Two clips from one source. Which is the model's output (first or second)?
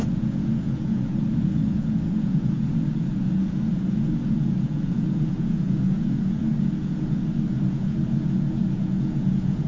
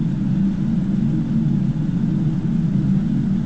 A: first